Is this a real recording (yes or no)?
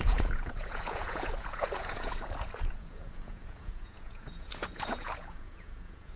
no